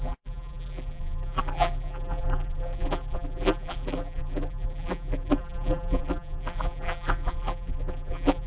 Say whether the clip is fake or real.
fake